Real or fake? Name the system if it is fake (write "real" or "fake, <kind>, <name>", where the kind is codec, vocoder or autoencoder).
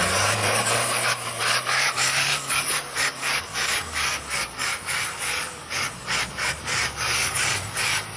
fake, codec, DAC